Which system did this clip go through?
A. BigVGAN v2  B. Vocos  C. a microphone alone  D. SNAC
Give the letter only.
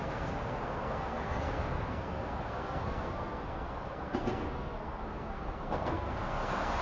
D